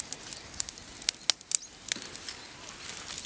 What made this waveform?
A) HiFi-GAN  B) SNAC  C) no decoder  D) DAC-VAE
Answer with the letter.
C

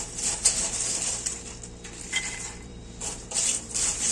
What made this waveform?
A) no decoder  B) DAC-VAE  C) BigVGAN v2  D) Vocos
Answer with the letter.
C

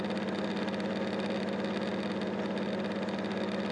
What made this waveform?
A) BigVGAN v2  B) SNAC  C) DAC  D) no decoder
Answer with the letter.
D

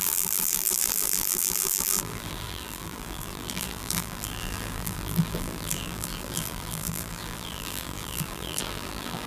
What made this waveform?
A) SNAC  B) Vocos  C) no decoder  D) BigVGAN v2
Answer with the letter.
D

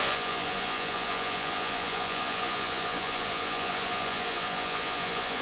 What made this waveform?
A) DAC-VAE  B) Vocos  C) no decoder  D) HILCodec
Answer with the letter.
B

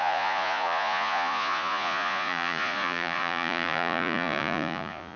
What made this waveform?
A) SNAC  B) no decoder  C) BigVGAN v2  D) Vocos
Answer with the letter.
D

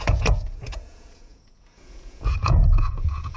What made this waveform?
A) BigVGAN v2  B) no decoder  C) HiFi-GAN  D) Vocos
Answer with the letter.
D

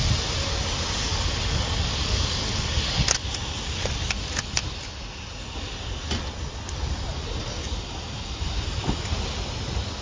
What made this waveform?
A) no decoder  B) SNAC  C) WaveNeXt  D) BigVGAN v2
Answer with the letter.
A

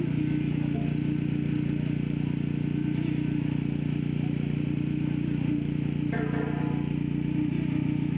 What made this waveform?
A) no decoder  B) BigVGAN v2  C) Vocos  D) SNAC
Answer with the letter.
A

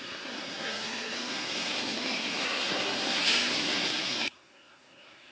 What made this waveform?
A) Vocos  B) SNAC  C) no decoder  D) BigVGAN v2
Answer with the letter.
B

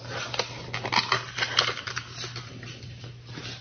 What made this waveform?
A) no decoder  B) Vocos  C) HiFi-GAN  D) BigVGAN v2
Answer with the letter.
A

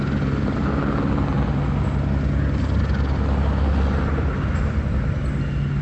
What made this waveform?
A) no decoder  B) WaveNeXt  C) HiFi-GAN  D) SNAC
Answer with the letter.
A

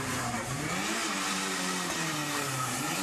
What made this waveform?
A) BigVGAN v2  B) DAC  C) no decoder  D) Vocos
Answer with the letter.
A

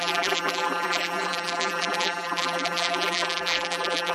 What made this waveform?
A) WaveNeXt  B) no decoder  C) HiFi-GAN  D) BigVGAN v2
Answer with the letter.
D